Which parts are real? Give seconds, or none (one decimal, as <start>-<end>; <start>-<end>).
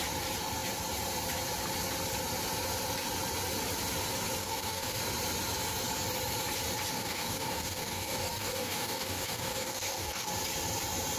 0.0-4.4; 5.0-6.9; 10.3-11.2